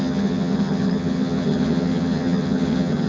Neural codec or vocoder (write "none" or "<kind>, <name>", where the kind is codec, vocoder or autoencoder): vocoder, HiFi-GAN